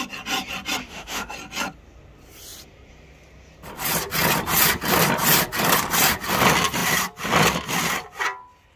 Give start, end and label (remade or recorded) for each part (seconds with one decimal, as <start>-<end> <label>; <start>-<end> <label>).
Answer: 0.0-0.8 recorded; 0.8-1.3 remade; 1.3-8.8 recorded